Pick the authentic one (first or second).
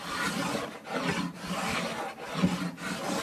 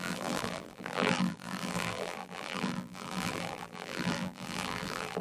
first